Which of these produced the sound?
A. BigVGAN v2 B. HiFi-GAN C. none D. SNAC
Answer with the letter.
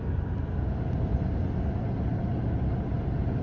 C